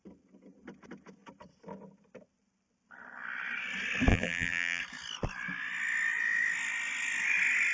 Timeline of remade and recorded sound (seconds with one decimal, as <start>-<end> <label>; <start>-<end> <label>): 0.0-4.1 recorded; 4.1-4.8 remade; 4.8-7.7 recorded